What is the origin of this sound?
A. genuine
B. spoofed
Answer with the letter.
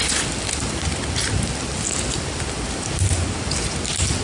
A